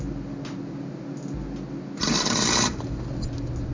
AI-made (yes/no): no